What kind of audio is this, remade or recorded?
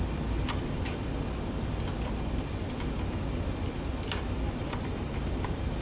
remade